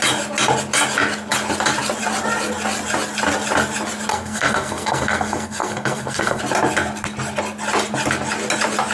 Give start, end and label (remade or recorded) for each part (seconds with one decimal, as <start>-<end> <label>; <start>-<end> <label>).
0.0-4.1 recorded; 4.1-6.4 remade; 6.4-8.9 recorded